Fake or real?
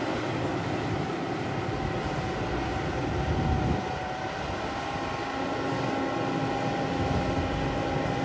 real